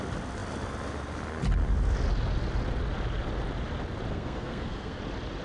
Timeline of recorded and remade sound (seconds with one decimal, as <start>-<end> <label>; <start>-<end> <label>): 0.0-4.1 recorded; 4.1-5.0 remade; 5.0-5.4 recorded